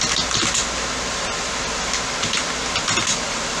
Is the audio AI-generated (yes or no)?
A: no